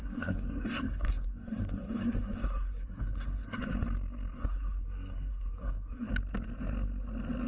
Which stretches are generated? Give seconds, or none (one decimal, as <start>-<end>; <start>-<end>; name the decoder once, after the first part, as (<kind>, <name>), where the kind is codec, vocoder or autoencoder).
0.0-3.6 (codec, SNAC); 4.4-6.1